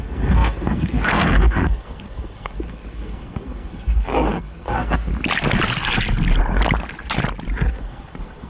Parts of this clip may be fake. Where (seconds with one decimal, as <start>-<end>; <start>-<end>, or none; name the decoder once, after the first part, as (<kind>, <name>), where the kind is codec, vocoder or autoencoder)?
0.0-5.1 (codec, SNAC); 7.7-8.5